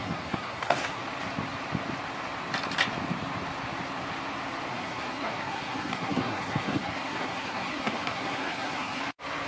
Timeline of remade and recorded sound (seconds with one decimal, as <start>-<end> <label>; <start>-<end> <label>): 0.0-1.0 remade; 1.0-4.7 recorded; 4.7-9.0 remade; 9.0-9.5 recorded